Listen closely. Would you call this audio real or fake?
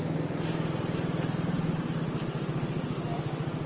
real